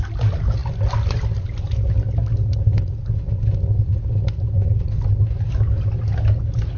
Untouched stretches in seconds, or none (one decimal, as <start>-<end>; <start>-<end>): 0.0-6.8